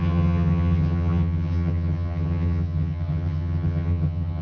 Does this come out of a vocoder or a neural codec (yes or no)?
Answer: yes